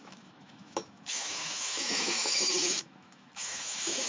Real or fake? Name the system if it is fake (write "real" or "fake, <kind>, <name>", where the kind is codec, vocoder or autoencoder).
fake, autoencoder, DAC-VAE